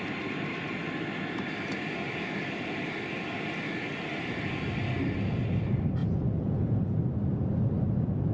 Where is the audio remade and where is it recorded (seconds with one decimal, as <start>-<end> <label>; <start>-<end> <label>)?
0.0-6.0 recorded; 6.0-7.0 remade; 7.0-8.3 recorded